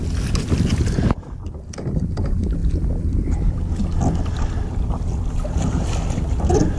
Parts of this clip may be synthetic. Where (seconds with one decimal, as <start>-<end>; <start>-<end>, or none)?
none